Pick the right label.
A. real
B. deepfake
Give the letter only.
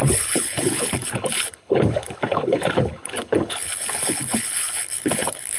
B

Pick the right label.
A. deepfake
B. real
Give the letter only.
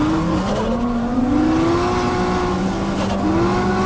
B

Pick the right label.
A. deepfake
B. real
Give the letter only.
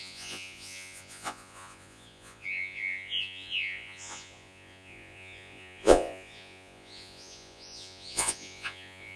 A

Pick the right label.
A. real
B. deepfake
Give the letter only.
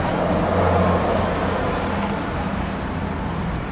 A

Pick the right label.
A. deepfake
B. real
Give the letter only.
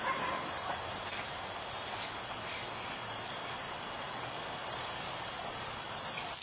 B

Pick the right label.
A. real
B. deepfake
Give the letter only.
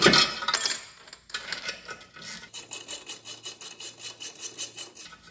A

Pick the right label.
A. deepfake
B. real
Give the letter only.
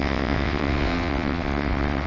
A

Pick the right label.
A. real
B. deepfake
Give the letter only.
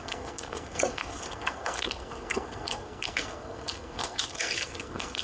B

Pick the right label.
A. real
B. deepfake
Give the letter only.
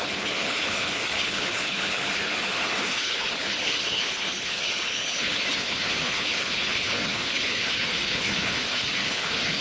B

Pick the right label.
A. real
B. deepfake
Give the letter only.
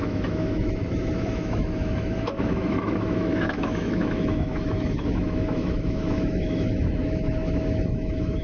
B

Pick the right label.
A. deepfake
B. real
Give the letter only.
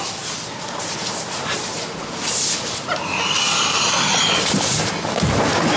B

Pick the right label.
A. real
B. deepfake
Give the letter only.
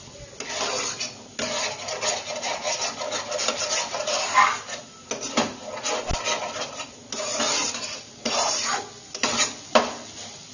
A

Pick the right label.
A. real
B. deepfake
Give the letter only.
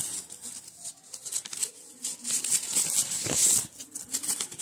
A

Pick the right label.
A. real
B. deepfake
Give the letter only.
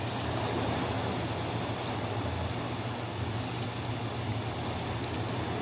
A